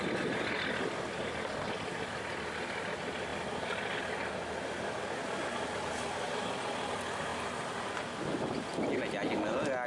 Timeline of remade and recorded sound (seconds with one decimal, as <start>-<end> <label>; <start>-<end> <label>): 0.0-9.9 recorded